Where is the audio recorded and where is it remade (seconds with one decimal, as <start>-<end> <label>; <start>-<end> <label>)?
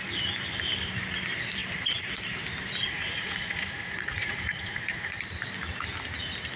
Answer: 0.0-2.8 recorded; 2.8-5.2 remade; 5.2-6.6 recorded